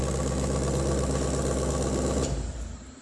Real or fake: real